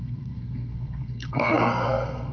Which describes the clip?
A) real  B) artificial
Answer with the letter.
B